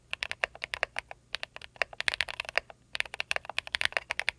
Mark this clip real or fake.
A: real